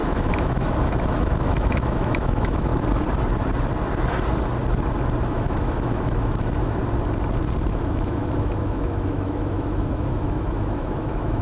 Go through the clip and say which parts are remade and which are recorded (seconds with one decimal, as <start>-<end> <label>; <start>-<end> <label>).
0.0-2.7 remade; 2.7-5.3 recorded; 5.3-6.8 remade; 6.8-7.7 recorded; 7.7-11.4 remade